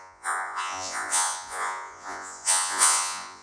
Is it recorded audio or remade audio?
remade